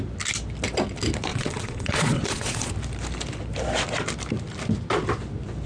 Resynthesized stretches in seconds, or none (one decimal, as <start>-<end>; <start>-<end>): 1.3-2.7